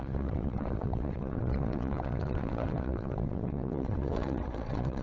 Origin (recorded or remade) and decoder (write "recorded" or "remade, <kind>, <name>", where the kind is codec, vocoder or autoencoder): remade, vocoder, WaveNeXt